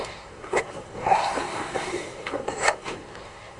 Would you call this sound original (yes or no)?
no